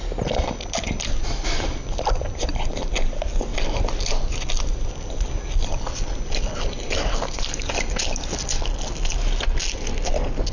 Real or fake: real